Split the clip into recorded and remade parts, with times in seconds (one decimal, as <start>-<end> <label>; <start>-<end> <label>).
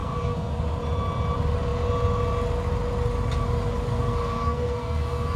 0.0-0.6 remade; 0.6-3.9 recorded; 3.9-5.4 remade